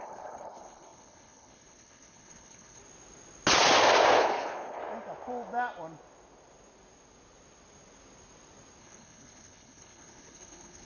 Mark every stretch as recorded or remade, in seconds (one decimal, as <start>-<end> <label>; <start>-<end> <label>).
0.0-2.8 remade; 2.8-4.2 recorded; 4.2-4.8 remade; 4.8-8.8 recorded; 8.8-10.9 remade